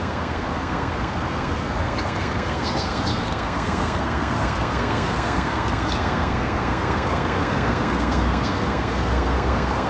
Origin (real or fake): fake